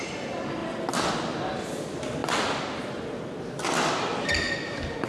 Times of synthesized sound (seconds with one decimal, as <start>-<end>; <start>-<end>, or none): none